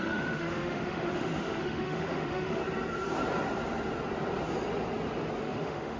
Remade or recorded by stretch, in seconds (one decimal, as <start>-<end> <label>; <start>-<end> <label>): 0.0-2.6 remade; 2.6-5.4 recorded; 5.4-6.0 remade